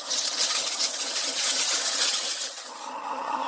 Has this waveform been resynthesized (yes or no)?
yes